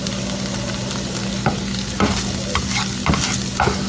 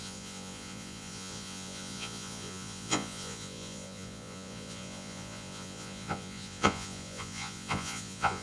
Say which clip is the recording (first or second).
first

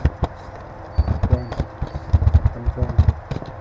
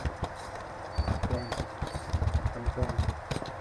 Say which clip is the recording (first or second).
first